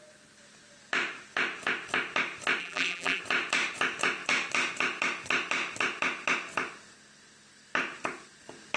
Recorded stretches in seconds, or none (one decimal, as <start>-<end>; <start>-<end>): 0.0-2.6; 3.2-8.8